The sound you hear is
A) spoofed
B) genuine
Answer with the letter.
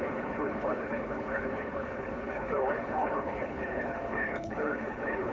A